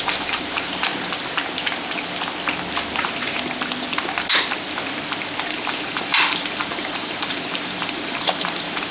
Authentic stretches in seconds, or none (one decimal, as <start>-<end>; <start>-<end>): 0.9-5.5

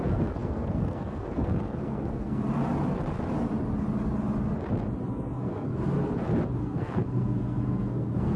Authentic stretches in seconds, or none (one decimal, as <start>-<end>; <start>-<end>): 2.4-5.1; 5.7-6.6